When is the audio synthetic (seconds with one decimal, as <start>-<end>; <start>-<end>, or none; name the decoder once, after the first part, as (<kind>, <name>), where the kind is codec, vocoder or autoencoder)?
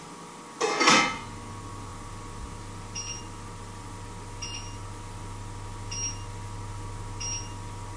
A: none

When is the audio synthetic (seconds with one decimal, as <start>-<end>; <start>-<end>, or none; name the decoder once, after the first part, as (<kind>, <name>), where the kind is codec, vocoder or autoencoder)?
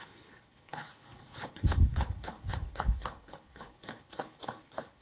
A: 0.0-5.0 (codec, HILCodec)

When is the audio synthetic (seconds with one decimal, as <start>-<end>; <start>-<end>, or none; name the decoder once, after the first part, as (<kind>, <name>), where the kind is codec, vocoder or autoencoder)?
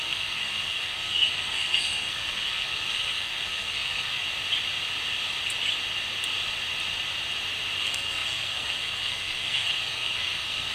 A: 0.0-4.2 (codec, SNAC); 7.8-10.7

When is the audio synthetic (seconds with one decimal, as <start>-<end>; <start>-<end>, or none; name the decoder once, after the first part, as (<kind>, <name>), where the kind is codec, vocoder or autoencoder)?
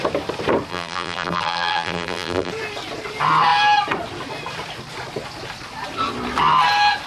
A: 0.7-2.5 (vocoder, BigVGAN v2)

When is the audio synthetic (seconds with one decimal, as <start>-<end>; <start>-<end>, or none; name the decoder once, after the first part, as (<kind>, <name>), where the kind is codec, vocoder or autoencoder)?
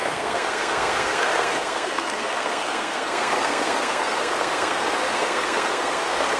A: 0.0-6.4 (codec, SNAC)